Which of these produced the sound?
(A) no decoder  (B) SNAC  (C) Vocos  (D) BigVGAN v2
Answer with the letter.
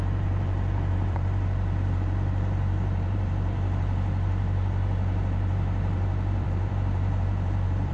D